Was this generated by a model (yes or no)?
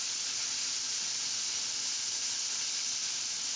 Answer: no